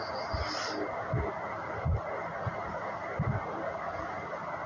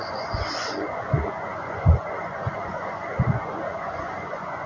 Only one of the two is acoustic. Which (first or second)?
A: first